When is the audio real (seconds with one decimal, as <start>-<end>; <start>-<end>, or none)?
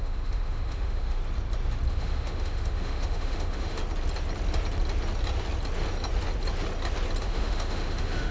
1.2-1.9; 3.8-7.2